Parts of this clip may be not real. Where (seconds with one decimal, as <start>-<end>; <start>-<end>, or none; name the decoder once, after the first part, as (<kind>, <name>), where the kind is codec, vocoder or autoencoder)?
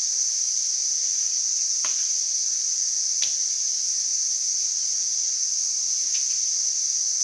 none